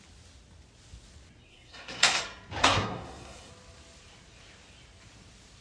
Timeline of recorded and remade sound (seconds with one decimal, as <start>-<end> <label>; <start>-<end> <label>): 0.0-1.5 recorded; 1.5-2.2 remade; 2.2-2.6 recorded; 2.6-3.5 remade; 3.5-5.6 recorded